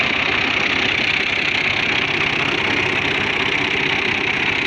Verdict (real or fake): real